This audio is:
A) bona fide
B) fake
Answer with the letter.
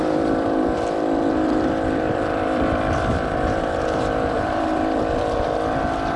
B